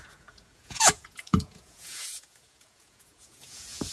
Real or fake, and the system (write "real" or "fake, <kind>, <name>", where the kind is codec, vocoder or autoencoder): fake, vocoder, Vocos